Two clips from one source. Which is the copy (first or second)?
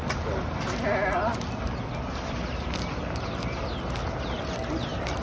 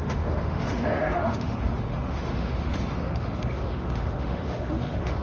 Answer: second